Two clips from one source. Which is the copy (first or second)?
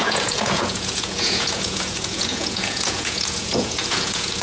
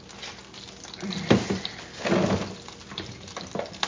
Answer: first